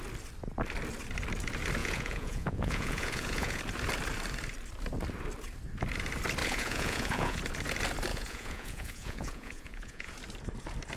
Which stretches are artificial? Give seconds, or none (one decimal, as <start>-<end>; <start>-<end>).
1.8-3.6; 6.4-7.4; 8.1-10.1